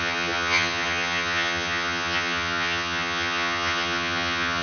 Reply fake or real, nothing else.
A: fake